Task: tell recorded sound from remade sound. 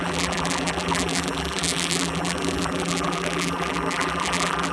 remade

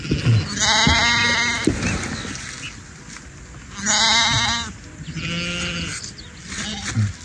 recorded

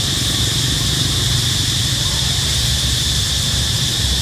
remade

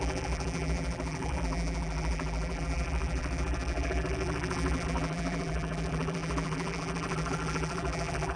remade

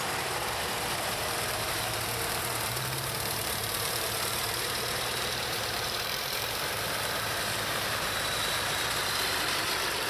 remade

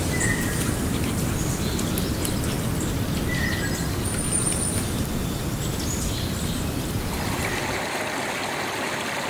recorded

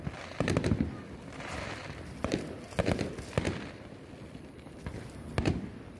remade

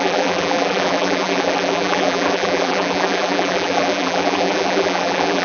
remade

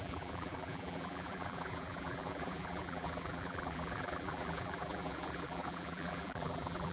remade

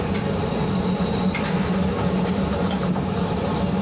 remade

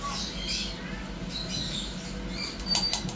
recorded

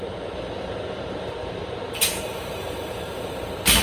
remade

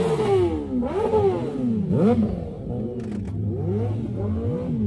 recorded